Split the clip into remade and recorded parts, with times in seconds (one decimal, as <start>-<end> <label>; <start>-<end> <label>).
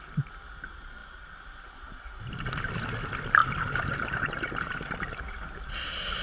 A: 0.0-6.2 recorded